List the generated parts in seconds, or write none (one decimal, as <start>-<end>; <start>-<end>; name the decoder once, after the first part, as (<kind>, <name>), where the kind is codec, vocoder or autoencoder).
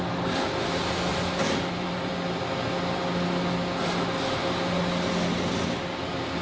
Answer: 1.1-2.1 (vocoder, BigVGAN v2)